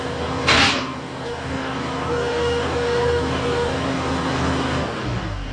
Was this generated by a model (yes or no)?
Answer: yes